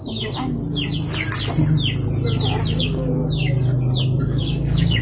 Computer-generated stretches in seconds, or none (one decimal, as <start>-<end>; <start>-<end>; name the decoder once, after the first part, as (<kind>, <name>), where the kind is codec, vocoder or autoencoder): 0.0-0.6 (codec, DAC); 2.8-3.2; 4.2-5.0